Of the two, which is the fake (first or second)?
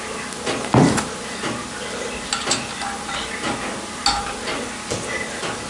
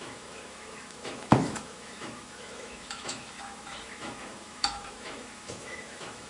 second